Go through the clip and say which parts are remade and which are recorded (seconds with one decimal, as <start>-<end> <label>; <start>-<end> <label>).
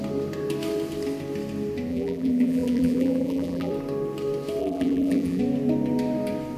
0.0-1.9 recorded; 1.9-3.7 remade; 3.7-4.6 recorded; 4.6-5.4 remade; 5.4-6.6 recorded